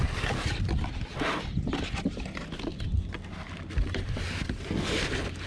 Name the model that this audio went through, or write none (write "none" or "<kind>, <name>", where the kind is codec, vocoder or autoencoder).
none